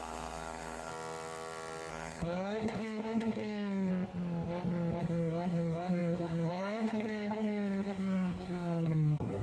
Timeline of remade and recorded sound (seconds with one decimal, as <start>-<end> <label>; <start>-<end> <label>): 0.0-0.9 remade; 0.9-1.9 recorded; 1.9-3.9 remade; 3.9-5.0 recorded; 5.0-9.4 remade